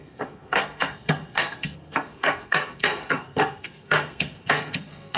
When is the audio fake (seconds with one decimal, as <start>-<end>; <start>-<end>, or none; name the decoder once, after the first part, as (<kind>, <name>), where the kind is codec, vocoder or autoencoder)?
0.0-5.2 (codec, SNAC)